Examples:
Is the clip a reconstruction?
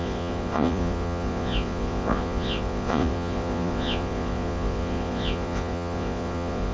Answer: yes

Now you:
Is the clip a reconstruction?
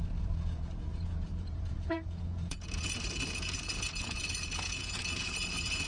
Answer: yes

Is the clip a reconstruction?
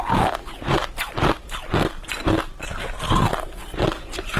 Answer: no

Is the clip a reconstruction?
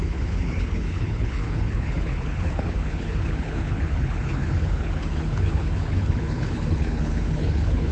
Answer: yes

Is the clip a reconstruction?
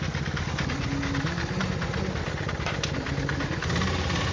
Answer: no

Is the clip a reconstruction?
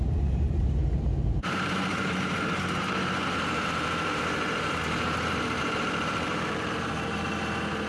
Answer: yes